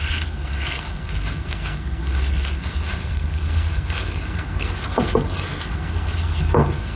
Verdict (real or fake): fake